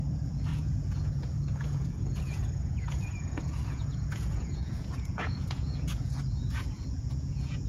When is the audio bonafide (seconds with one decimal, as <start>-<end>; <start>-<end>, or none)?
none